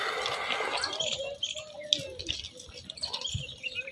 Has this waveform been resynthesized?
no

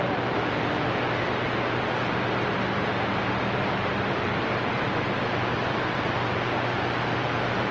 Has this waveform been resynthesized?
no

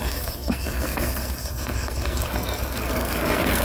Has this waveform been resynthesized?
yes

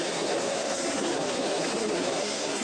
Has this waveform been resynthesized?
yes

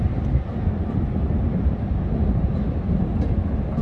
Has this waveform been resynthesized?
no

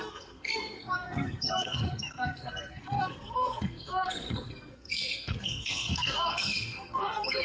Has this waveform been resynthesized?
yes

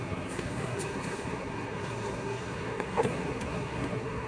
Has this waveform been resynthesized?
yes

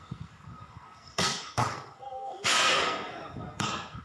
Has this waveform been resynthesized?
yes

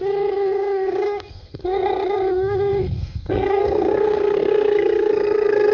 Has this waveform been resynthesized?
yes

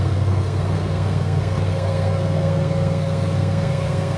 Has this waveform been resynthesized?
yes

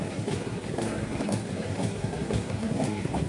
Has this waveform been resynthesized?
yes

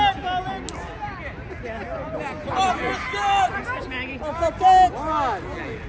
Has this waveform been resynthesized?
no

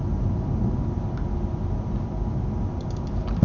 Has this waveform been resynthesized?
no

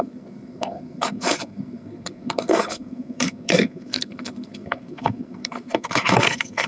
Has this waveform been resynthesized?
yes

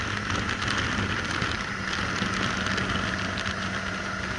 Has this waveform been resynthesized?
no